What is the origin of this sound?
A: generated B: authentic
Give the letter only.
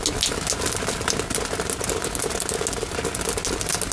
B